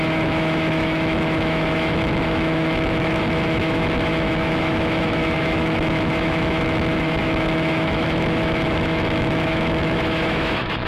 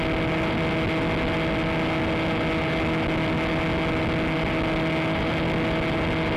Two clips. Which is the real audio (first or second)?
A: second